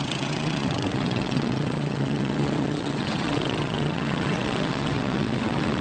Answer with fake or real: fake